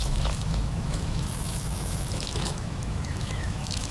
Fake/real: fake